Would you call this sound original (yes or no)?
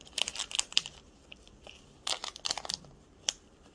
no